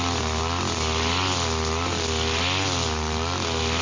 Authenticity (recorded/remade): recorded